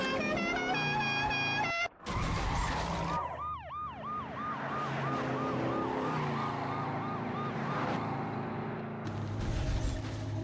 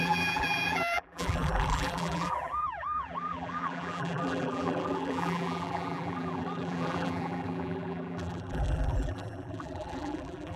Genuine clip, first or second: first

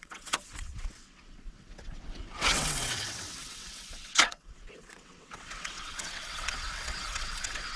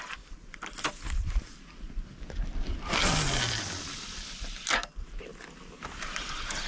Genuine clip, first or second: second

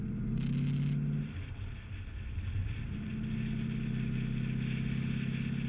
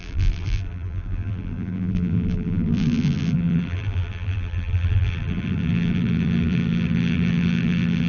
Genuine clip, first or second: first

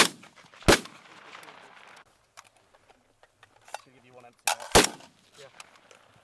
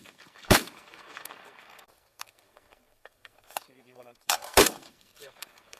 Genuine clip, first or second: first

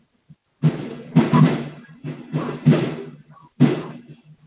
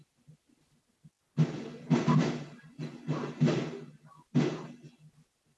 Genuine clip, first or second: second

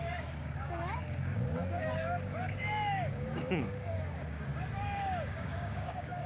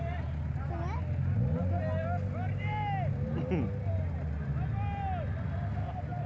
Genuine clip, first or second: second